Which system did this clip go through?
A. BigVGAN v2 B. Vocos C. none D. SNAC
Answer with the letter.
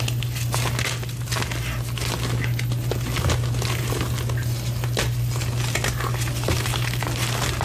C